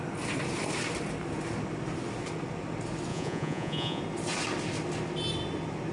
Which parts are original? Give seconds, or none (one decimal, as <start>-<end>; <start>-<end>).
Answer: 0.0-3.1; 4.0-5.9